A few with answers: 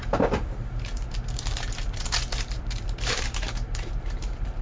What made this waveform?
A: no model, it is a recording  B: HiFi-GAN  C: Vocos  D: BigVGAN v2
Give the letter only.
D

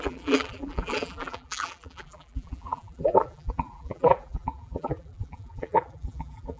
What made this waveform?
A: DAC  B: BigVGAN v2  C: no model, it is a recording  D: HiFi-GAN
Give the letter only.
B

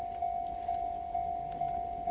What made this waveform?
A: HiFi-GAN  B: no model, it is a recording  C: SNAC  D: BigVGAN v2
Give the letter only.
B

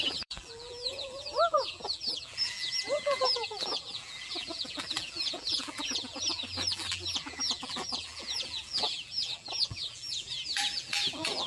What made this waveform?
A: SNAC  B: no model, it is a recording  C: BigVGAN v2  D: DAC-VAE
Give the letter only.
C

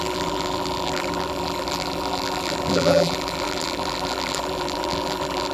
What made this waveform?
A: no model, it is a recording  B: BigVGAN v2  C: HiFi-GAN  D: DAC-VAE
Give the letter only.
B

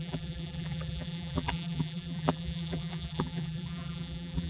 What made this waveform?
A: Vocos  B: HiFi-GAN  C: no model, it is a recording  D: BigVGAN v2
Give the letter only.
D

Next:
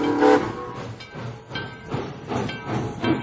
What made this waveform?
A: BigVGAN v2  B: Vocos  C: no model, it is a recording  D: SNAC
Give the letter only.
C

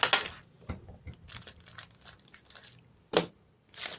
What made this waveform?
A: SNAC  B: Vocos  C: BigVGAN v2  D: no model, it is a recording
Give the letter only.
D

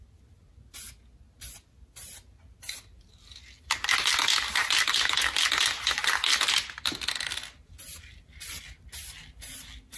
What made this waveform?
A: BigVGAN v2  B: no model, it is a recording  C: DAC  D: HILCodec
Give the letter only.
B